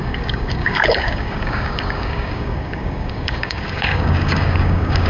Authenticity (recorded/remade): remade